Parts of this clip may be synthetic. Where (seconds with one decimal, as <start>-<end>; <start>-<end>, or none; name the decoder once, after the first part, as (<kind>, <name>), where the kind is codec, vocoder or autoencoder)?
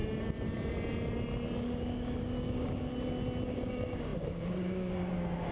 1.6-2.9 (codec, DAC); 3.5-5.5